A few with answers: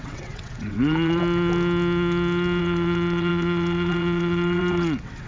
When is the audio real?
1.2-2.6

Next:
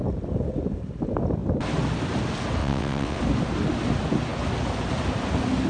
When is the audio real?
0.0-2.6; 3.2-5.7

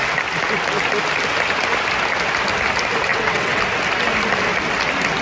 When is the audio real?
0.0-3.1; 3.6-5.2

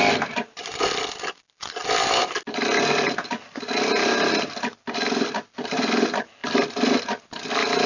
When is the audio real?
0.0-7.9

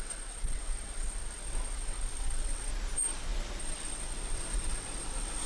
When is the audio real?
2.7-3.6

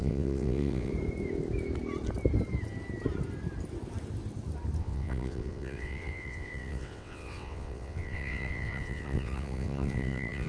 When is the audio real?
0.9-4.8

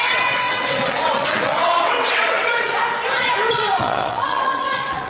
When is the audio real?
2.7-3.5

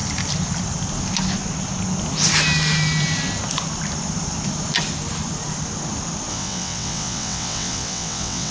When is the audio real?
0.0-6.3